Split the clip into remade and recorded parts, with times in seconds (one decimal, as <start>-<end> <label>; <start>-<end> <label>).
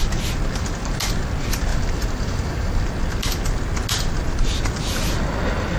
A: 0.0-1.7 recorded; 1.7-2.8 remade; 2.8-5.8 recorded